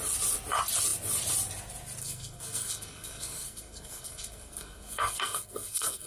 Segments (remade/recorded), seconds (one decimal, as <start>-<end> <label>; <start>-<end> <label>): 0.0-2.0 recorded; 2.0-6.1 remade